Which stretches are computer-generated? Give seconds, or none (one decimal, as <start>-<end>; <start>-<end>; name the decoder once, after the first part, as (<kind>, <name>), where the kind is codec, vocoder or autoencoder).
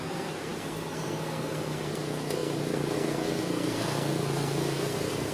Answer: 0.0-5.3 (codec, SNAC)